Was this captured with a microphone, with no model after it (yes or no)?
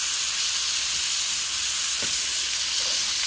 yes